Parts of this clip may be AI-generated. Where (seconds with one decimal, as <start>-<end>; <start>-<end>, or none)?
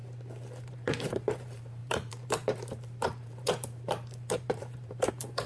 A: 0.6-5.5